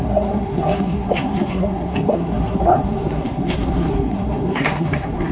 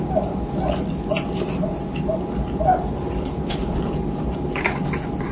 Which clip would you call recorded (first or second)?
second